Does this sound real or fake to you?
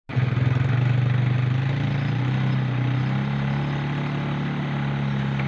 real